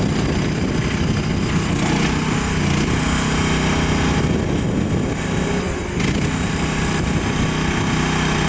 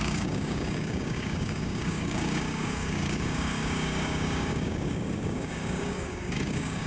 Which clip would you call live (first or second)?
first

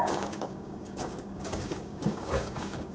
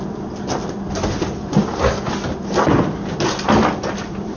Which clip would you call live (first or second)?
second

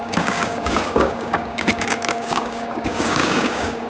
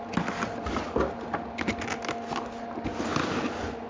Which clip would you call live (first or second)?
second